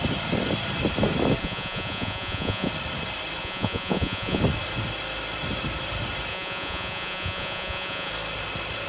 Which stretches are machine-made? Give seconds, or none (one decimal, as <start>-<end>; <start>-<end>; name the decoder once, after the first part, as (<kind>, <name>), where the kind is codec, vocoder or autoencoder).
1.4-2.7 (vocoder, Vocos); 3.4-4.4; 6.3-8.1